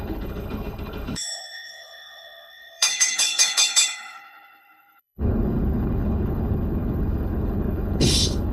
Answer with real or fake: fake